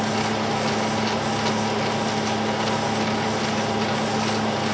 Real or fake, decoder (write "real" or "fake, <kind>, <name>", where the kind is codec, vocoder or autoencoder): real